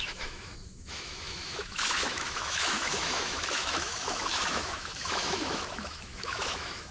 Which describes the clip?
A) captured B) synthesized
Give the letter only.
B